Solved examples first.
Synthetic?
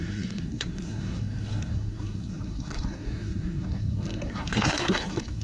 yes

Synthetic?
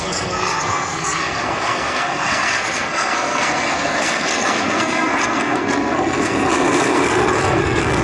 yes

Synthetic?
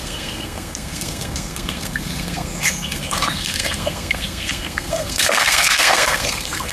yes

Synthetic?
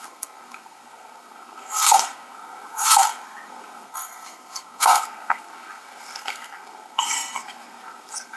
yes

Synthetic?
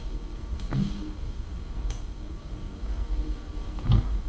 yes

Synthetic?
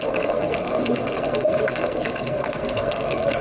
yes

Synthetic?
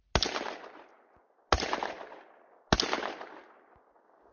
no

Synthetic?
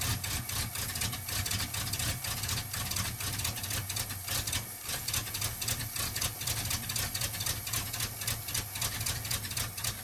no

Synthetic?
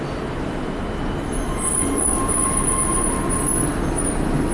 no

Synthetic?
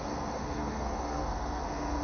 yes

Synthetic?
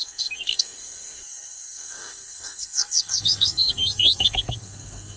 yes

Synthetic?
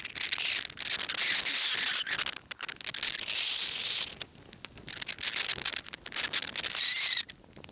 no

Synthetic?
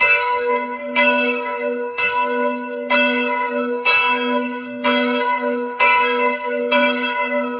yes